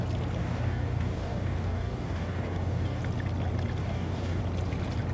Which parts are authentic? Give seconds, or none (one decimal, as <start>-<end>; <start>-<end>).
0.0-0.4; 3.0-3.8; 4.4-5.1